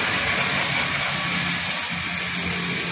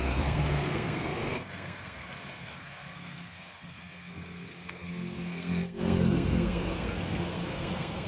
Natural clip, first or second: first